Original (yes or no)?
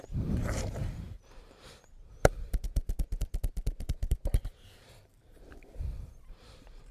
no